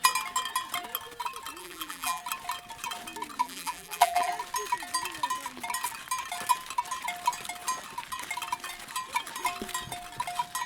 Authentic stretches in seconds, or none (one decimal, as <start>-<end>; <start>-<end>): 0.0-1.6; 2.2-3.4; 4.3-10.7